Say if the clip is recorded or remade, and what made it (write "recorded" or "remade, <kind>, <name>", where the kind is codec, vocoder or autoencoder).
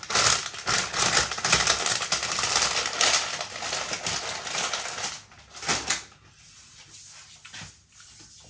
recorded